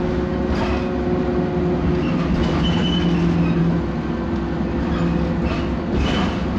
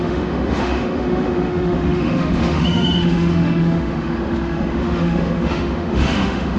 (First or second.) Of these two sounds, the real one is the first